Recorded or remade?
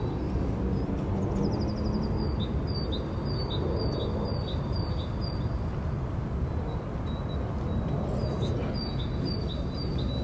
recorded